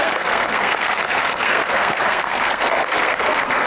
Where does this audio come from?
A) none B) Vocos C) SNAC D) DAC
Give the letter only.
C